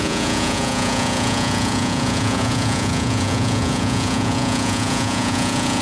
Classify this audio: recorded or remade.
remade